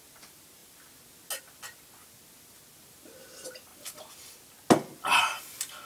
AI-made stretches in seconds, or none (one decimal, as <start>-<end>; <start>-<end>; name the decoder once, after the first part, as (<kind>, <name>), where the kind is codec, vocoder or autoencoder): none